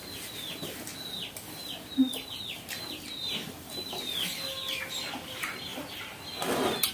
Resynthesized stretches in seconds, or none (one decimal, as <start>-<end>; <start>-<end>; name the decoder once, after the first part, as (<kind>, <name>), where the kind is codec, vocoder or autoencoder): none